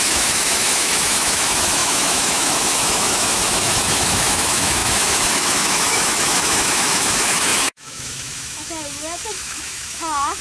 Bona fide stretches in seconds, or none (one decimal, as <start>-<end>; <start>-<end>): none